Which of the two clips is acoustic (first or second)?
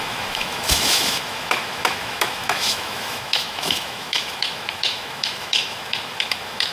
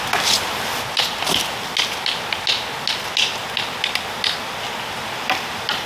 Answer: second